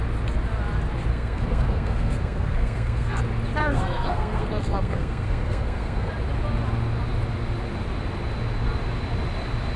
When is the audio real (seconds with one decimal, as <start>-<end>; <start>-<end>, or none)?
0.0-1.1; 3.2-3.6; 6.1-9.8

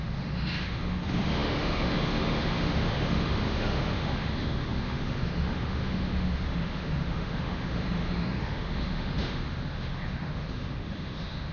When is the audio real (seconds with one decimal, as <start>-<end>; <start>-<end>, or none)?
none

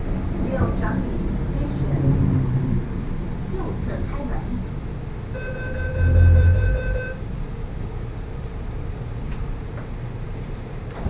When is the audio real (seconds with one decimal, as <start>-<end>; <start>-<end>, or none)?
4.3-6.4

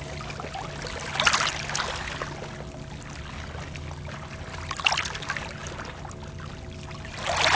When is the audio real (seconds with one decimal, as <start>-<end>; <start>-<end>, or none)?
0.0-7.5

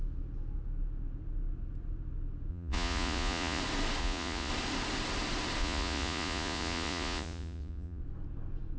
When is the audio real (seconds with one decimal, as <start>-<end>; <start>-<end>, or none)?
0.0-2.5; 3.6-4.0; 4.5-5.6; 8.0-8.8

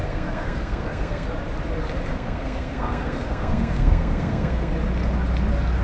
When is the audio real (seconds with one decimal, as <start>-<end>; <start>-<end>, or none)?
1.3-2.1; 4.7-5.8

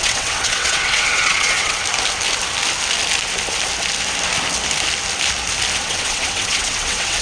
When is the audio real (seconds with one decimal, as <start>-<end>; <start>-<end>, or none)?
1.8-5.8